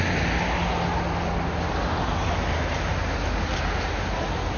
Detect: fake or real real